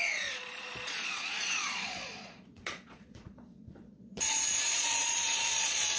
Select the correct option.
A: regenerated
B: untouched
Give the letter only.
A